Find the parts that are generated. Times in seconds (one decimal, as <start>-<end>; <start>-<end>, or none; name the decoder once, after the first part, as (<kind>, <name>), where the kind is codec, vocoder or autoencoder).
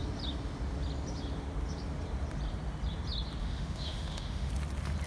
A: 3.4-4.5 (autoencoder, DAC-VAE)